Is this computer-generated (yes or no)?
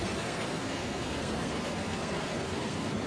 yes